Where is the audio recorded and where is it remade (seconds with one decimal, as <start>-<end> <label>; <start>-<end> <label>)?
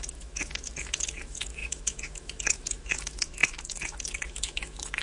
0.0-5.0 remade